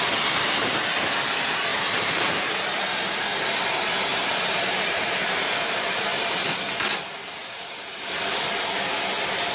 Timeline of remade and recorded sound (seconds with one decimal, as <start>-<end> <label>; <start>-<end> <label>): 0.0-1.7 recorded; 1.7-2.5 remade; 2.5-4.1 recorded; 4.1-6.6 remade; 6.6-7.4 recorded; 7.4-8.2 remade; 8.2-9.5 recorded